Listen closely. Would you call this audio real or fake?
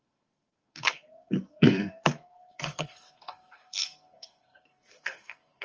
fake